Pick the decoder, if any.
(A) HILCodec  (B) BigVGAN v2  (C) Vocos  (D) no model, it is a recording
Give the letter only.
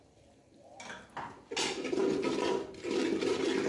D